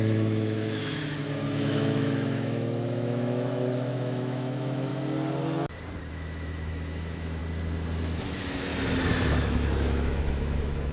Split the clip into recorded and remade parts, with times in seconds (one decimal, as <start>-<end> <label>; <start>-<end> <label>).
0.0-4.9 remade; 4.9-6.1 recorded; 6.1-7.4 remade; 7.4-8.2 recorded; 8.2-8.7 remade; 8.7-9.3 recorded; 9.3-10.9 remade